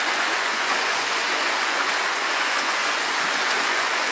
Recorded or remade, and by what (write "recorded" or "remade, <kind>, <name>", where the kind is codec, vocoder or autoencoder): remade, vocoder, Vocos